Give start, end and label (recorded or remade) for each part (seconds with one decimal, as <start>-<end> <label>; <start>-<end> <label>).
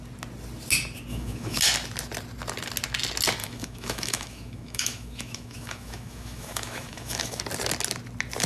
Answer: 0.0-1.1 recorded; 1.1-1.6 remade; 1.6-3.4 recorded; 3.4-7.4 remade; 7.4-8.5 recorded